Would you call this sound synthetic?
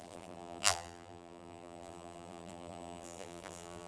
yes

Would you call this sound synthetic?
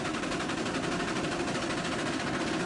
no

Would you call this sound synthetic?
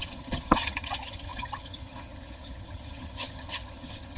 yes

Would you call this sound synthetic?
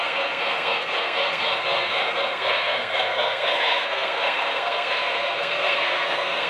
yes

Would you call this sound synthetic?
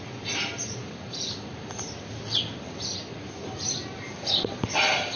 no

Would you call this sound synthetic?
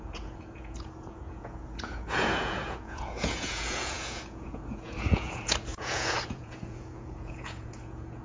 yes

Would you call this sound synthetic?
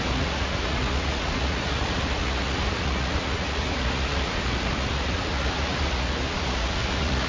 yes